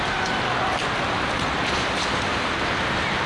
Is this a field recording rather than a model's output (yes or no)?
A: yes